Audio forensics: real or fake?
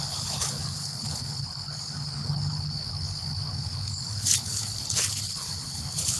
fake